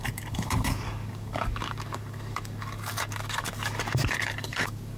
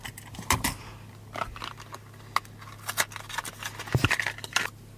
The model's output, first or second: first